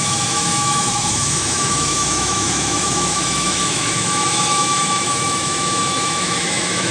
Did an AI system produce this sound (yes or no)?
yes